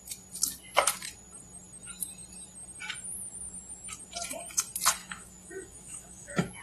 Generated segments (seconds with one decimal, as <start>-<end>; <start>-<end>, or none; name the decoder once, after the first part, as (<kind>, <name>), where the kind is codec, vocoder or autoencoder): 5.0-6.6 (autoencoder, DAC-VAE)